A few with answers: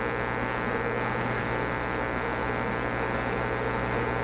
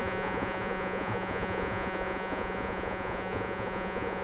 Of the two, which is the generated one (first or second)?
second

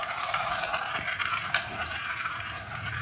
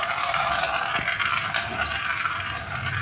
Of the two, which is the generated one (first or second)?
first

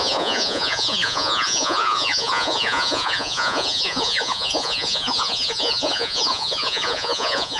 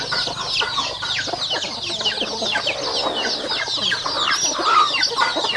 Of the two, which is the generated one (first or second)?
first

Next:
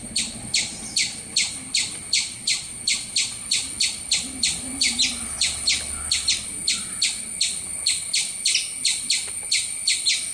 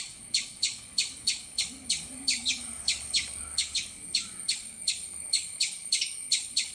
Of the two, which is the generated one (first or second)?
second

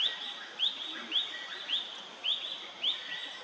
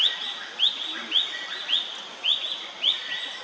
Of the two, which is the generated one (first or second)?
first